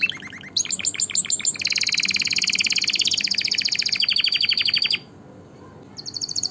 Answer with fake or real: real